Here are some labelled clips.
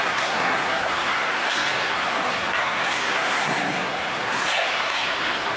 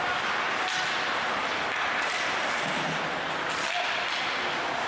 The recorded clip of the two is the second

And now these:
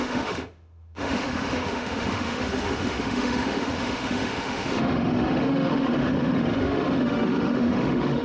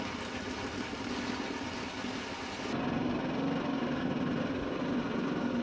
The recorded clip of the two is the second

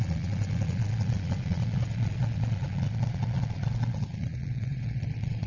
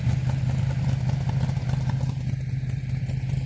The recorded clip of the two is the second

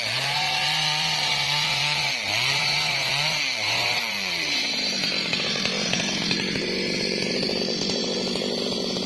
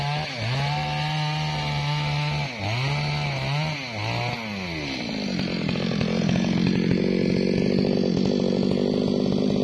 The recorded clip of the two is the second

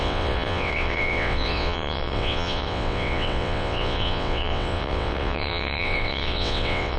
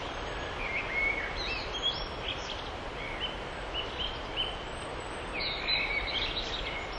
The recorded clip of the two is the second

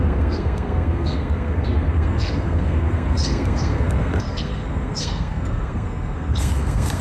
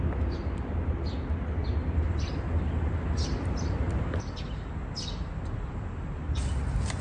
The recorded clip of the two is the second